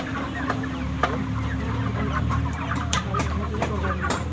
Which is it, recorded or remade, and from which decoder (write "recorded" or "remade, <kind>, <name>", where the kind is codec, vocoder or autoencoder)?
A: remade, vocoder, BigVGAN v2